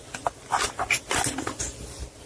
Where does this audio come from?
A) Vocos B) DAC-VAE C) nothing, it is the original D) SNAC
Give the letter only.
C